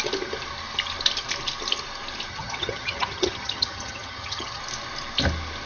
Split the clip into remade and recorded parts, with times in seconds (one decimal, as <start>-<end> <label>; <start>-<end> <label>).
0.0-2.3 recorded; 2.3-4.6 remade; 4.6-5.7 recorded